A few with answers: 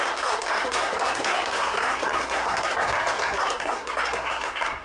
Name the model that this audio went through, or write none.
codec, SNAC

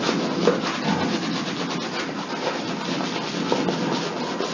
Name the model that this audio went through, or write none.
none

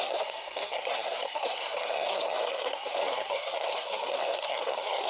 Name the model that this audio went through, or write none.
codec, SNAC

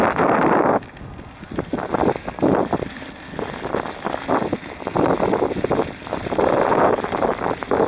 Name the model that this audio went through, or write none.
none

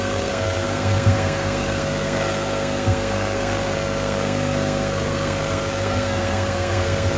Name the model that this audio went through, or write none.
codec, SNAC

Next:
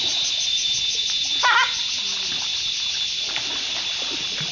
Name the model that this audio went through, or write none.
none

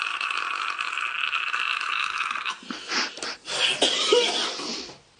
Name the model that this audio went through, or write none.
none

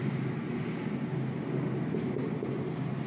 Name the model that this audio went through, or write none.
none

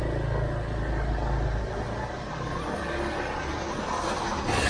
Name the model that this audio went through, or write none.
none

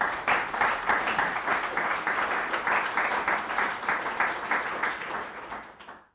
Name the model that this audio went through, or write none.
none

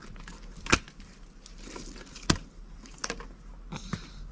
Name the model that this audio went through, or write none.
none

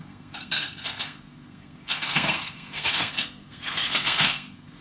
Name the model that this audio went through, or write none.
codec, SNAC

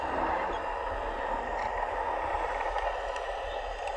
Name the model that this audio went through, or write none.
none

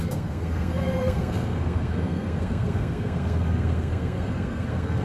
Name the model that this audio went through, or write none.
codec, SNAC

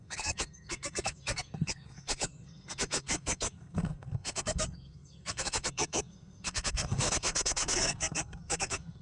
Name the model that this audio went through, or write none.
codec, SNAC